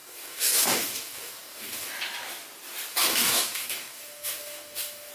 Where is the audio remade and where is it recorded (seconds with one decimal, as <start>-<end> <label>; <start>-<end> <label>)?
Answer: 0.0-1.9 remade; 1.9-2.9 recorded; 2.9-5.1 remade